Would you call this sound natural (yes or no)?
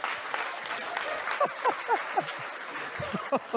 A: yes